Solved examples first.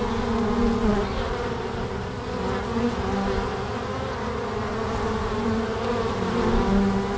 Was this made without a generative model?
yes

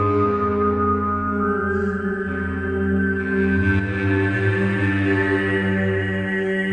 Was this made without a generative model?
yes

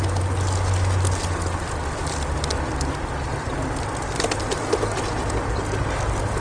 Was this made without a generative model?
yes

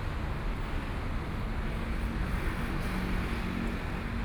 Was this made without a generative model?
yes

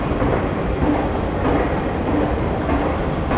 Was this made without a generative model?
yes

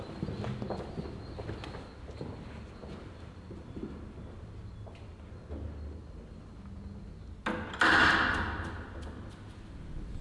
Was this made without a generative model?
yes